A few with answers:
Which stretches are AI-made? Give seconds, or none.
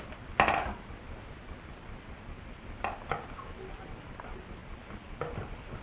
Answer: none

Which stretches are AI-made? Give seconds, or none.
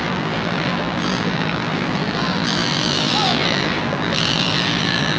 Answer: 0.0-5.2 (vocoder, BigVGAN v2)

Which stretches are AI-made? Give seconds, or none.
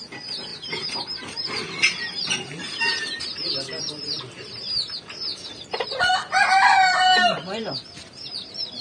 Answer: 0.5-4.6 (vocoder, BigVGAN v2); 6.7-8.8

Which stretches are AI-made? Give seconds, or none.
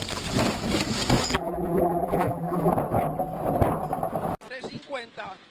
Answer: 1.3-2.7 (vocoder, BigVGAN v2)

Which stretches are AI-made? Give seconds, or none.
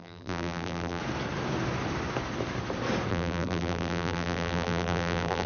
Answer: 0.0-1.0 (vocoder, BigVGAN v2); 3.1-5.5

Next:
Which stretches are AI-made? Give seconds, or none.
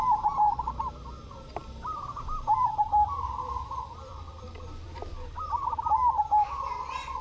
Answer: 1.6-5.9 (vocoder, BigVGAN v2)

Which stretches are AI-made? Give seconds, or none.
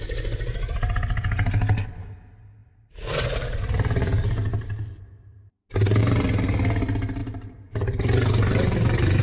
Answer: 2.6-6.0 (vocoder, BigVGAN v2); 7.2-9.2